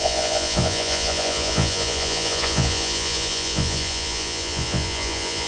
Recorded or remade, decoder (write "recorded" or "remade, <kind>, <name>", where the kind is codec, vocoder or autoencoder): remade, vocoder, Vocos